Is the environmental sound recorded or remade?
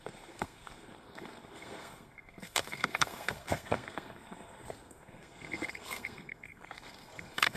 remade